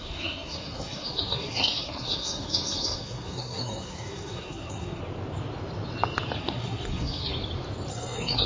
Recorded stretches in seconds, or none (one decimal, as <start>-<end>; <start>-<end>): 5.0-6.4; 7.3-7.9